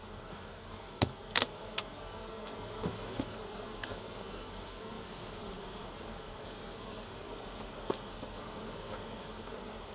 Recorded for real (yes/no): no